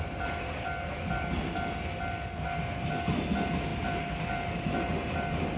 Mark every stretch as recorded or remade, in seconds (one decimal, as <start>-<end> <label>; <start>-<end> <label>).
0.0-5.6 recorded